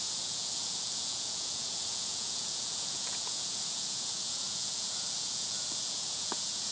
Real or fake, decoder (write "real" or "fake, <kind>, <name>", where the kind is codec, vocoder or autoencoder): fake, vocoder, Vocos